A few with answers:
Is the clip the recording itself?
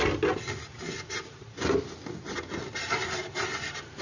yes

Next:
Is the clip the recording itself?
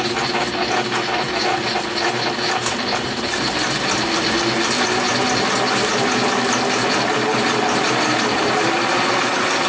yes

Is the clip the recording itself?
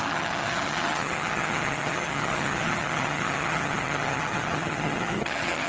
no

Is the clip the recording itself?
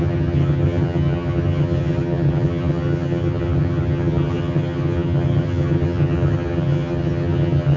no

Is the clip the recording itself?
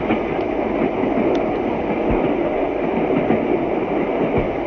yes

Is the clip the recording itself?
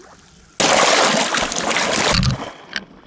yes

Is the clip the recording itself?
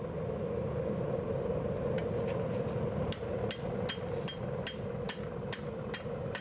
yes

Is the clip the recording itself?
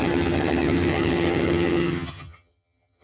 no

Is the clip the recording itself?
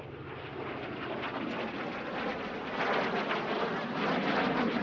yes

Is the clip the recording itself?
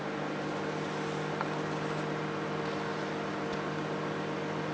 yes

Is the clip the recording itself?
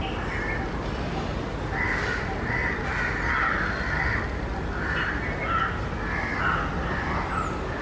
yes